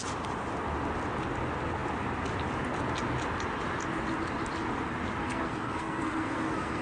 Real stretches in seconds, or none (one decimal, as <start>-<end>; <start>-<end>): 0.0-5.2